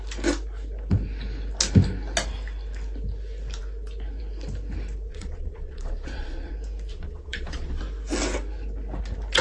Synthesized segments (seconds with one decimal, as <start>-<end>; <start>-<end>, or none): 5.1-6.5; 6.9-7.8